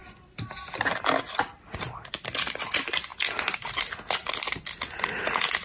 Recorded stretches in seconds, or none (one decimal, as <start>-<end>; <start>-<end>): 0.0-5.6